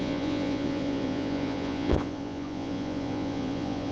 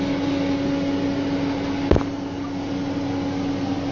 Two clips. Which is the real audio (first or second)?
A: second